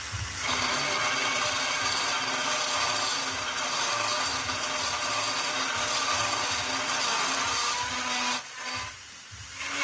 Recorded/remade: recorded